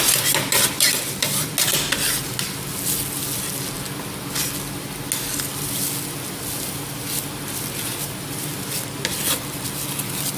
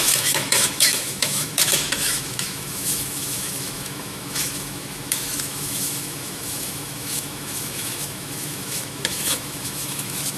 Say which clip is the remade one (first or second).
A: second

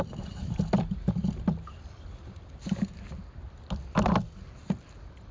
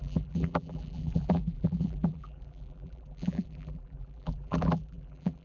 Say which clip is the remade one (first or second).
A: second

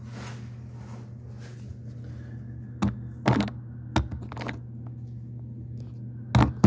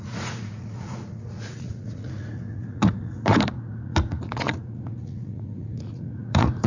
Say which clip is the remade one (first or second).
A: second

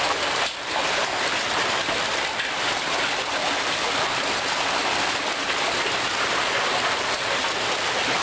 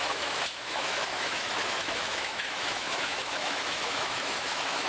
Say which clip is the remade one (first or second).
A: second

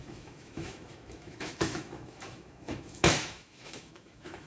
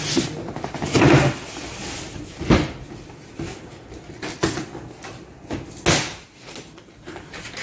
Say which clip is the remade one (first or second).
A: first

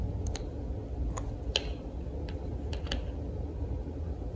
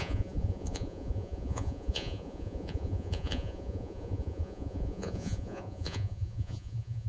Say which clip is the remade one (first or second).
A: second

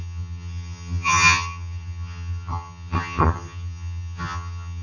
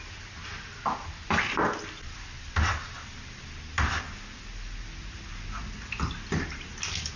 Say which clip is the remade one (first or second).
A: first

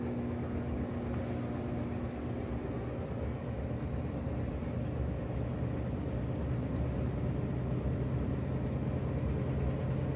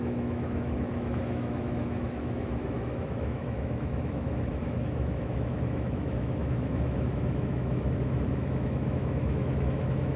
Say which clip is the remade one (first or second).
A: second